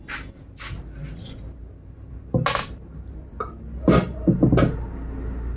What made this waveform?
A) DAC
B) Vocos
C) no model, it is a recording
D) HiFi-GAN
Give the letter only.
C